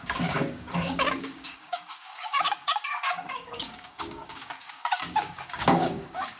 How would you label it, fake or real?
fake